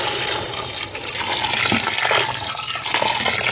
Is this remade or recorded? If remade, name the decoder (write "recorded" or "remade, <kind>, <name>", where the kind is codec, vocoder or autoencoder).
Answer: recorded